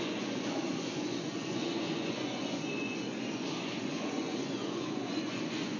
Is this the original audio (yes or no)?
no